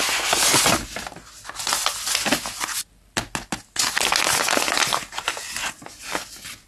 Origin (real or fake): real